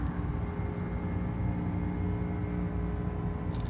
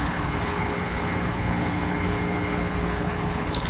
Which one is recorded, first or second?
first